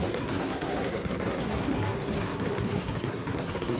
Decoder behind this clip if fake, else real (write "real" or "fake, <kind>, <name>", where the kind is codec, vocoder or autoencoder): fake, codec, SNAC